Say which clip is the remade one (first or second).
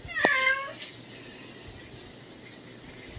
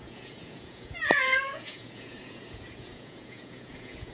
second